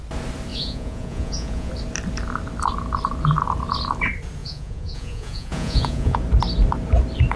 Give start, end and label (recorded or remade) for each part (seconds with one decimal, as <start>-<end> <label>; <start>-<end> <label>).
0.0-0.5 recorded; 0.5-1.7 remade; 1.7-4.4 recorded; 4.4-6.2 remade; 6.2-7.4 recorded